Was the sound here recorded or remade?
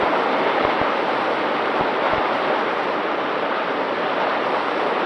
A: remade